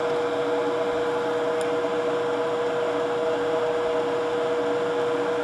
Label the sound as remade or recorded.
recorded